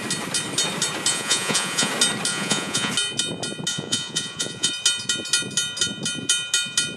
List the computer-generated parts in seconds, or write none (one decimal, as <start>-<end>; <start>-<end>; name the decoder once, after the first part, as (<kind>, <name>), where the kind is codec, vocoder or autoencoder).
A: 1.1-1.9 (vocoder, Vocos); 2.3-2.9; 3.7-4.7